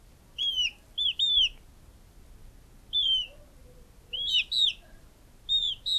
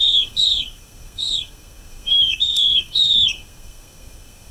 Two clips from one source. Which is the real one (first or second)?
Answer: first